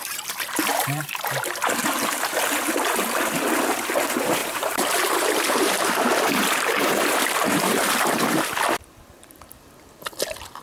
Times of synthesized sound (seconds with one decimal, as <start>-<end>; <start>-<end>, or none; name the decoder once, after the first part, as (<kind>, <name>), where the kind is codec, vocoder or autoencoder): 0.7-1.2 (vocoder, BigVGAN v2); 1.8-2.6; 4.4-8.4